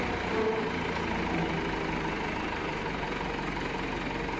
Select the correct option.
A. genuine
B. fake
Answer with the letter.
A